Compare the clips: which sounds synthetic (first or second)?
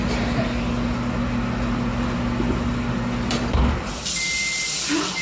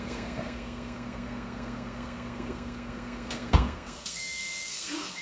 second